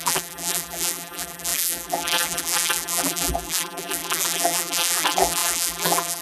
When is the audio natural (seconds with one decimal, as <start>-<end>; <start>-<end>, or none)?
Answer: none